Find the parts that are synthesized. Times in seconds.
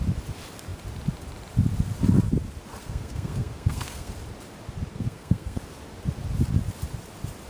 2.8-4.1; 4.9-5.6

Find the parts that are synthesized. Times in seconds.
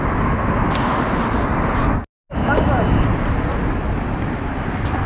none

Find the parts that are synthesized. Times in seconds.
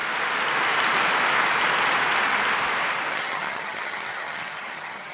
3.1-5.1